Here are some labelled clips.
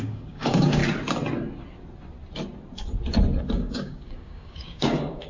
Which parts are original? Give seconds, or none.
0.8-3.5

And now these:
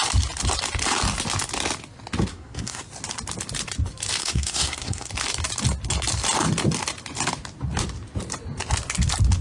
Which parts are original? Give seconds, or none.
0.0-2.3; 2.8-4.2; 5.1-9.4

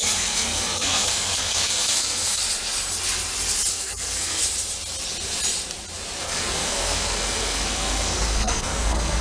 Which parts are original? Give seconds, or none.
2.4-3.7; 4.4-6.2